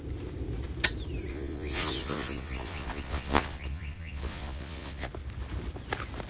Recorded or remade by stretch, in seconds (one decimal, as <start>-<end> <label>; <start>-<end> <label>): 0.0-1.3 recorded; 1.3-5.1 remade; 5.1-6.3 recorded